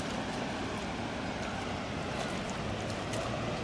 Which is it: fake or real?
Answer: real